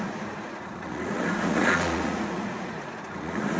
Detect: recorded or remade remade